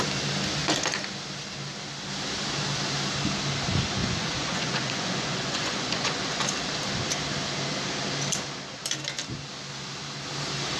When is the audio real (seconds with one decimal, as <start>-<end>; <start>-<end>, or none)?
0.0-4.0; 6.4-10.8